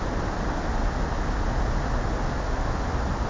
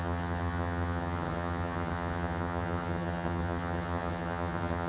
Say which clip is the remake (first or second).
second